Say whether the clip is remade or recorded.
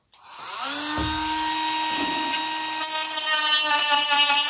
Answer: recorded